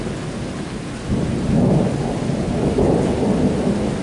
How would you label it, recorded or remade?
recorded